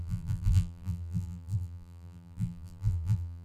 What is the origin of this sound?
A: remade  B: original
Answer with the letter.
A